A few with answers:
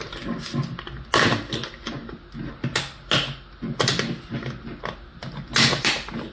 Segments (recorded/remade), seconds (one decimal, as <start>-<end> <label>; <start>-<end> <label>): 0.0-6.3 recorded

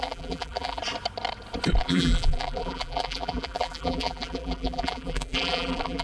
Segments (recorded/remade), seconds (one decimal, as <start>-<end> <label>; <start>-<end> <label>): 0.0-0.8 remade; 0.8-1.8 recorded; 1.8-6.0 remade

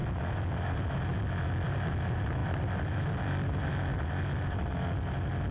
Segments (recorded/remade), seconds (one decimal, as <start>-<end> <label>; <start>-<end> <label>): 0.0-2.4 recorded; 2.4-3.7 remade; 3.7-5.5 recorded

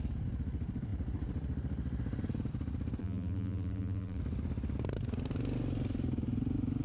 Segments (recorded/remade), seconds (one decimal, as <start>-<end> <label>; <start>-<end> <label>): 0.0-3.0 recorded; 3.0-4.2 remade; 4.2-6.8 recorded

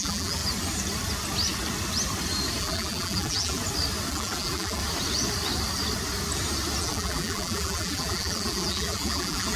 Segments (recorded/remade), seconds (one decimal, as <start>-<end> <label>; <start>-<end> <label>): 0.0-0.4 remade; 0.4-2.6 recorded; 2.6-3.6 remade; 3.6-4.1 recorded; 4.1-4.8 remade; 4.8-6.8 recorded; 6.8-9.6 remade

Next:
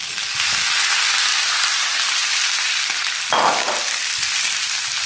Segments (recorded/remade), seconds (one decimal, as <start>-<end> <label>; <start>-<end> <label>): 0.0-1.3 recorded; 1.3-2.4 remade; 2.4-5.1 recorded

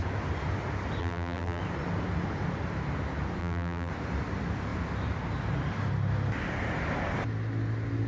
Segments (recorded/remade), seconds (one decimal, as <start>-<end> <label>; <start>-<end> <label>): 0.0-1.0 recorded; 1.0-1.6 remade; 1.6-3.4 recorded; 3.4-3.9 remade; 3.9-8.1 recorded